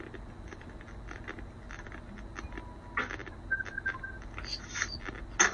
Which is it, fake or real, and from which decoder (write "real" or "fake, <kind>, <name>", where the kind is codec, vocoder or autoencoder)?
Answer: real